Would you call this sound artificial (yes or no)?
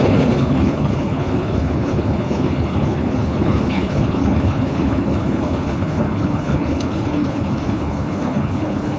yes